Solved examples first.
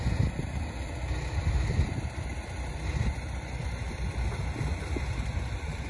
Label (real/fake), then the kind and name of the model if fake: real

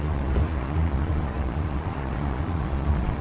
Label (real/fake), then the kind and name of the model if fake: fake, vocoder, Vocos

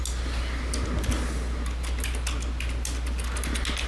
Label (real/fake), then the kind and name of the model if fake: real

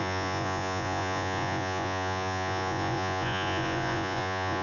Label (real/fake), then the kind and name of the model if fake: fake, vocoder, Vocos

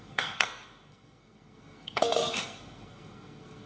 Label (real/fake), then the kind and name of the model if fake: fake, codec, SNAC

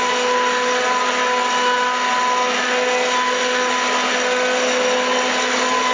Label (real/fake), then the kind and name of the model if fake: real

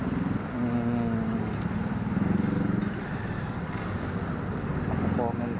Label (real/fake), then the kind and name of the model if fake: real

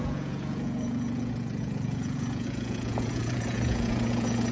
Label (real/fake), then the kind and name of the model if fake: fake, vocoder, Vocos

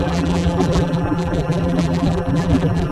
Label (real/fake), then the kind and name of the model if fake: fake, vocoder, BigVGAN v2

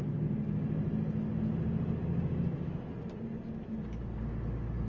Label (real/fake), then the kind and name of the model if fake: real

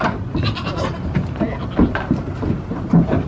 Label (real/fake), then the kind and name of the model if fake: real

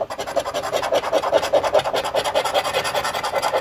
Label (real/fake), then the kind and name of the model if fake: real